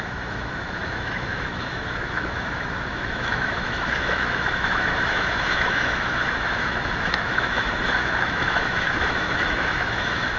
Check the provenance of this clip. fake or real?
fake